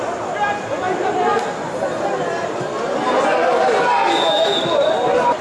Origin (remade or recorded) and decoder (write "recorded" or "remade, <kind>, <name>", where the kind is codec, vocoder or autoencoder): recorded